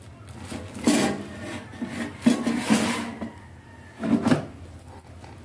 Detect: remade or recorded recorded